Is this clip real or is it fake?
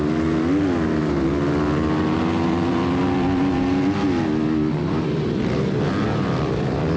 real